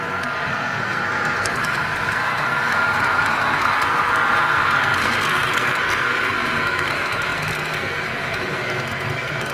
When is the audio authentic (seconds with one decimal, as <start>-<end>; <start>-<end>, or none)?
none